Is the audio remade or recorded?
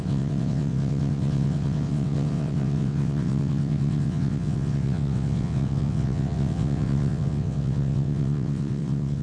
remade